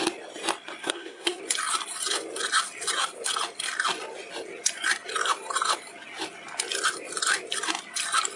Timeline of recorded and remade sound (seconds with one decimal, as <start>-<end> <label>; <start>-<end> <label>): 0.0-0.8 recorded; 0.8-1.4 remade; 1.4-8.4 recorded